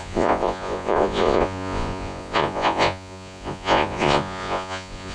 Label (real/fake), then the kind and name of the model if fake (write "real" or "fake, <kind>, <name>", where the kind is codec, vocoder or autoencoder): fake, vocoder, Vocos